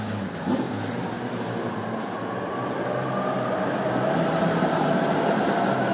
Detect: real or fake real